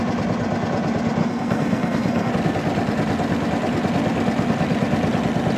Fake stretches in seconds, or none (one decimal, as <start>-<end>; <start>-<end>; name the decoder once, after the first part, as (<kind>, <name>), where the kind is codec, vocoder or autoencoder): 1.2-2.3 (codec, SNAC)